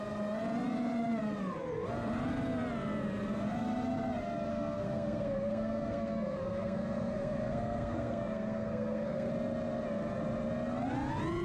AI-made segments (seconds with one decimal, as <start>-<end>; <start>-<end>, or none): 4.5-9.3